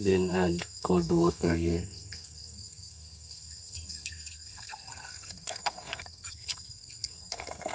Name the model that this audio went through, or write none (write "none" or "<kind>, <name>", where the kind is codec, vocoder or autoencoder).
codec, SNAC